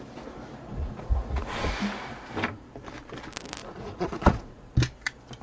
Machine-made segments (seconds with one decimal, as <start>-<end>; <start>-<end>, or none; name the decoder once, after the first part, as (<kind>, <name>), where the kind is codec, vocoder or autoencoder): 0.7-1.7 (vocoder, Vocos); 3.6-4.7